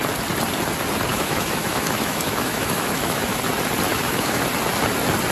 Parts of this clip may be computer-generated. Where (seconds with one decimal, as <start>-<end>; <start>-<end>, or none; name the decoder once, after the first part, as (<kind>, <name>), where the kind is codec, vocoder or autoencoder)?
1.1-3.4 (autoencoder, DAC-VAE); 3.9-4.4